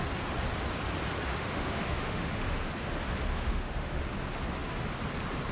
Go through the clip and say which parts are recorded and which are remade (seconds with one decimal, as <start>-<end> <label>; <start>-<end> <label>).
0.0-1.3 recorded; 1.3-2.7 remade; 2.7-3.3 recorded; 3.3-4.0 remade; 4.0-5.5 recorded